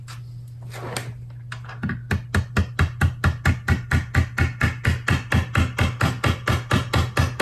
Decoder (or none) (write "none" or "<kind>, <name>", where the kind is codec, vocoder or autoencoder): none